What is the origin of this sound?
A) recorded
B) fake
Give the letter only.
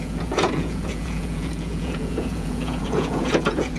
B